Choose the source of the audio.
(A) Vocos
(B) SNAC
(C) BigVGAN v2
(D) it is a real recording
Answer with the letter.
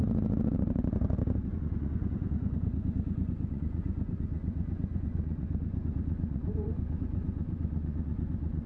A